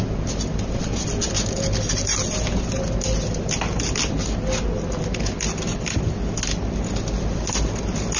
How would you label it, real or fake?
real